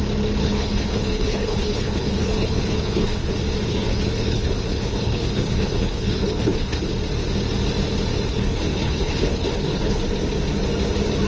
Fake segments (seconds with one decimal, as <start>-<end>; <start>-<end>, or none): 0.4-3.3; 3.7-6.9; 8.3-10.0